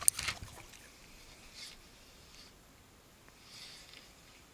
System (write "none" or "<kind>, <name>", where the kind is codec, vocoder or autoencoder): none